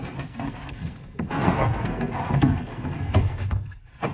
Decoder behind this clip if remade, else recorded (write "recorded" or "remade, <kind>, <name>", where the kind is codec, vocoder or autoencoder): remade, codec, SNAC